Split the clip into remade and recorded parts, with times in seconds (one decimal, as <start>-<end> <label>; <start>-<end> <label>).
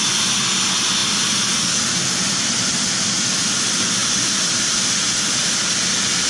0.0-6.3 recorded